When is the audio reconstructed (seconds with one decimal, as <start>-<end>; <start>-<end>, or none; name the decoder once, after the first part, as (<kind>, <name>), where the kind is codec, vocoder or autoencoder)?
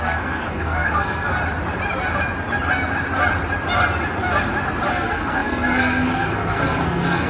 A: 0.0-1.3 (codec, SNAC); 4.9-7.3